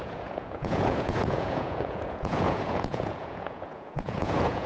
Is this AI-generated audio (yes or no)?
yes